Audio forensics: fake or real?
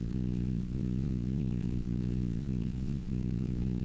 fake